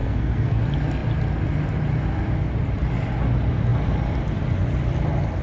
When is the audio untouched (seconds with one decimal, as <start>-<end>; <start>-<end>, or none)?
0.6-5.4